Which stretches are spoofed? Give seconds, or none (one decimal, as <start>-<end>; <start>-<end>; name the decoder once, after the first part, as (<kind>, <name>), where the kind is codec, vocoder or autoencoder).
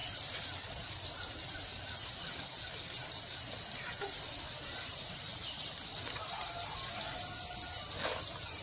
none